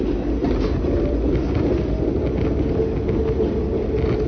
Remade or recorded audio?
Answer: recorded